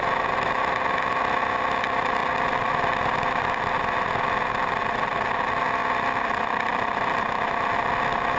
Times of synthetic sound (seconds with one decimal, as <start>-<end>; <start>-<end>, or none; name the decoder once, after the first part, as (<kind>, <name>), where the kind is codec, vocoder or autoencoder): 2.2-5.2 (vocoder, BigVGAN v2); 5.8-7.2